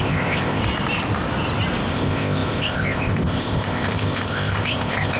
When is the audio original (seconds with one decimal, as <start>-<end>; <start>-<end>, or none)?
0.6-1.9

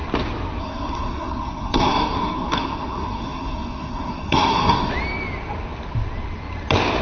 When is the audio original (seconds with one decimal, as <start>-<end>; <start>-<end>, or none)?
0.0-0.6; 4.9-7.0

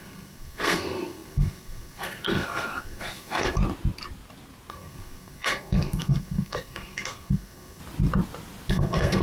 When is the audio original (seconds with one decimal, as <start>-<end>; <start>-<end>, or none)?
3.6-4.7; 7.8-8.7

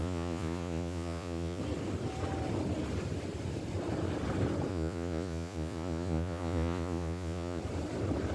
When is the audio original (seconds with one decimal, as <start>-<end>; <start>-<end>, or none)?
1.6-4.7; 7.6-8.3

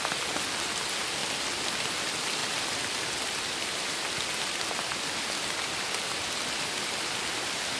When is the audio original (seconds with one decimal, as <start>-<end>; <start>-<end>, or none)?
0.0-7.8

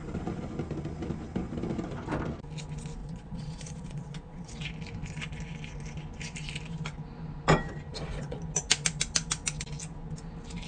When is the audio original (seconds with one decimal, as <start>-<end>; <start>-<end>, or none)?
0.0-3.0; 4.5-7.9; 8.4-10.7

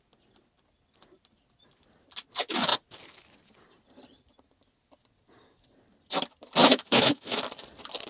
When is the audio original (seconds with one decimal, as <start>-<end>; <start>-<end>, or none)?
0.0-6.6; 7.4-8.1